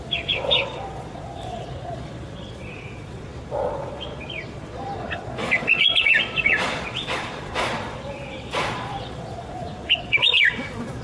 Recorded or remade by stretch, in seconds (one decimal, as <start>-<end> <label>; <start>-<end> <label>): 0.0-11.0 remade